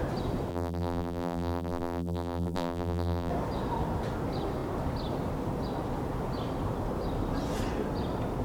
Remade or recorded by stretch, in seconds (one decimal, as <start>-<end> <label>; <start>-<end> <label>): 0.0-0.5 recorded; 0.5-3.3 remade; 3.3-8.4 recorded